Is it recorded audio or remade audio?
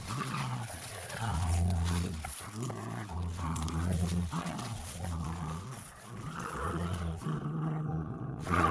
remade